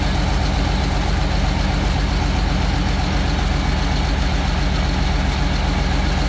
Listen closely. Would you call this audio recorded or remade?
recorded